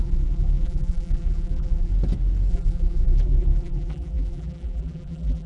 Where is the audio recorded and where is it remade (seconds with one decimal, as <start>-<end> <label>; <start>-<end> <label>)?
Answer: 0.0-1.9 remade; 1.9-2.5 recorded; 2.5-5.5 remade